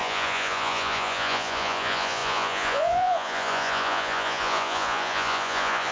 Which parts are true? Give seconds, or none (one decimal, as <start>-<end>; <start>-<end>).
none